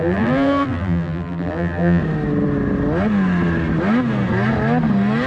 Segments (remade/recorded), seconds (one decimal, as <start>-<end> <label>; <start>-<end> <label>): 0.0-2.0 remade; 2.0-5.3 recorded